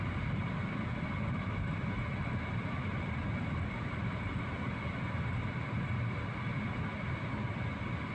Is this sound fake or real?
real